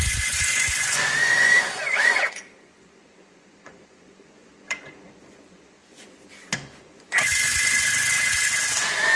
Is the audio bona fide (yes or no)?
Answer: no